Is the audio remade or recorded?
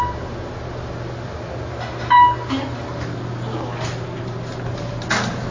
recorded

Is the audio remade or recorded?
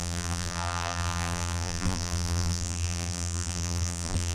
remade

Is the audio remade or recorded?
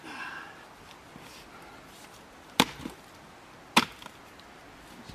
recorded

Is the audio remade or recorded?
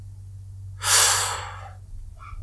recorded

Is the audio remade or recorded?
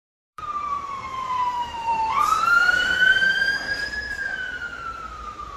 remade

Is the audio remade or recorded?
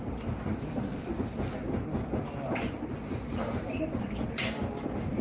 recorded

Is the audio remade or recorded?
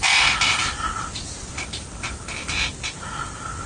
recorded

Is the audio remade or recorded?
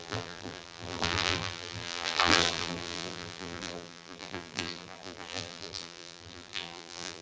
remade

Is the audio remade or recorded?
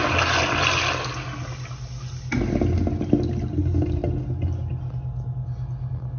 recorded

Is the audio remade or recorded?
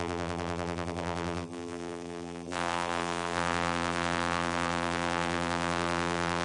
remade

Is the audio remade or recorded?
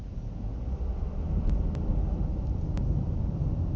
recorded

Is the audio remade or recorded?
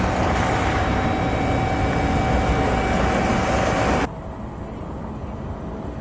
recorded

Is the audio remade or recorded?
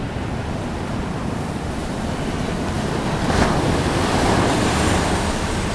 remade